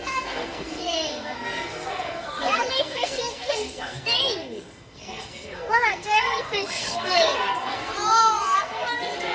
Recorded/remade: remade